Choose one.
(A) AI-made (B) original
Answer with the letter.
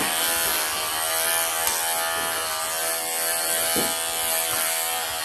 B